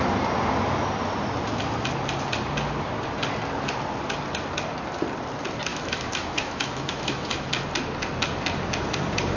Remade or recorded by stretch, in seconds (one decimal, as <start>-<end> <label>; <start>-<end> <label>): 0.0-5.7 recorded; 5.7-7.5 remade; 7.5-9.4 recorded